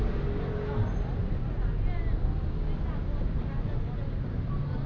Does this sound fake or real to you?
real